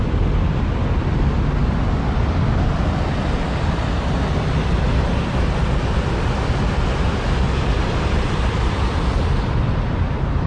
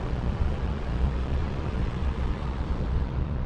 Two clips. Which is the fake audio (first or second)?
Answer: second